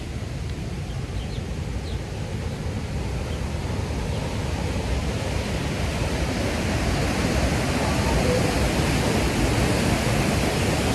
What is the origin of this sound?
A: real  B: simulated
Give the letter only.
A